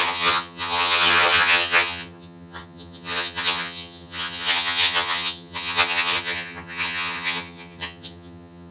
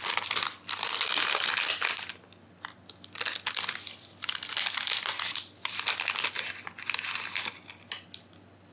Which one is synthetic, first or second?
first